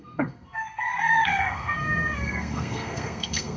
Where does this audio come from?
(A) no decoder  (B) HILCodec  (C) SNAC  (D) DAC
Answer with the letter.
C